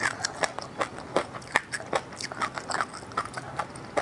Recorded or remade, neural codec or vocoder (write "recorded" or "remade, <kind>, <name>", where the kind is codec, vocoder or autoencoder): recorded